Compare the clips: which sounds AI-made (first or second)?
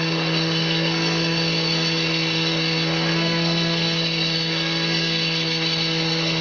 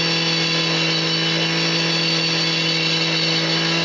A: first